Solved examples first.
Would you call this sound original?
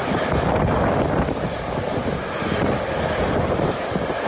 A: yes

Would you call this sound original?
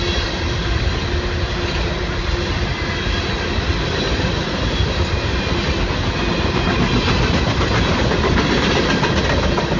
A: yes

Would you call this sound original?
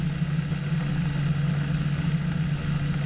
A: yes